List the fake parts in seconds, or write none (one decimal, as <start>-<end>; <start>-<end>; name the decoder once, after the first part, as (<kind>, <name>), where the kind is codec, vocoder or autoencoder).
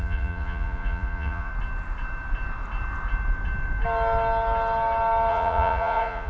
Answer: 0.0-1.5 (vocoder, Vocos); 5.3-6.3